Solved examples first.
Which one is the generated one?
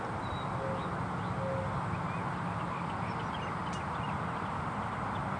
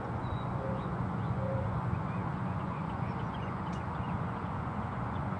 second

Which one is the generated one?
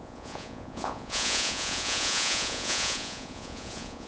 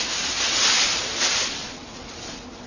first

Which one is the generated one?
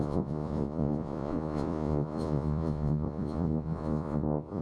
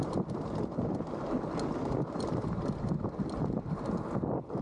first